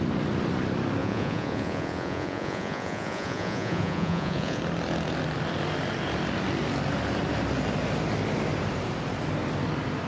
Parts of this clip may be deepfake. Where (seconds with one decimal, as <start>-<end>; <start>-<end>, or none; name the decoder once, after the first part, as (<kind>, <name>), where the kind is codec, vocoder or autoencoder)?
1.0-4.6 (vocoder, Vocos)